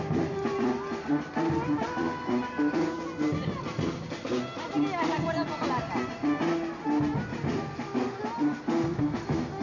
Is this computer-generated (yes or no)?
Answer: no